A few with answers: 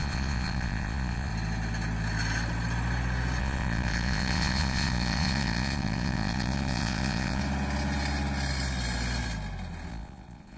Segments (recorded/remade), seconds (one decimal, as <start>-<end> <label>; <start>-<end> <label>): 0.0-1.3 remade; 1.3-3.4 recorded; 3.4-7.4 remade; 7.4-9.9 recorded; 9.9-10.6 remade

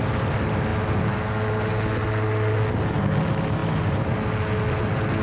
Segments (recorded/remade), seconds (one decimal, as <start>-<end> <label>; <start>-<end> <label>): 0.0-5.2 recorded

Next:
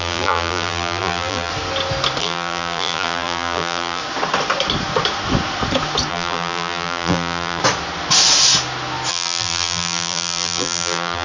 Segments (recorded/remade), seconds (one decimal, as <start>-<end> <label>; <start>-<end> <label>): 0.0-1.5 remade; 1.5-2.2 recorded; 2.2-4.0 remade; 4.0-6.1 recorded; 6.1-7.6 remade; 7.6-9.1 recorded; 9.1-11.2 remade

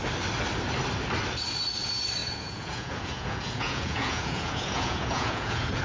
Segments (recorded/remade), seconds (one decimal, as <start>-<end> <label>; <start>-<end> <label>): 0.0-2.2 recorded; 2.2-5.8 remade

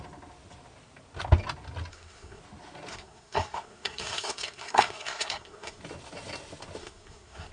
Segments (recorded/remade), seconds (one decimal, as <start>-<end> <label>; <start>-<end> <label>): 0.0-1.9 recorded; 1.9-2.4 remade; 2.4-2.9 recorded; 2.9-5.8 remade; 5.8-6.8 recorded; 6.8-7.5 remade

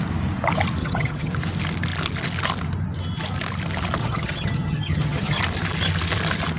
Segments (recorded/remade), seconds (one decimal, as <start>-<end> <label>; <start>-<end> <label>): 0.0-0.8 recorded; 0.8-1.3 remade; 1.3-4.0 recorded; 4.0-5.4 remade; 5.4-6.6 recorded

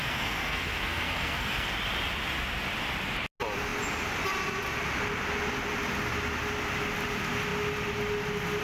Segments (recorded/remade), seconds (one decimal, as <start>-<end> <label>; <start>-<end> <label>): 0.0-1.7 remade; 1.7-8.6 recorded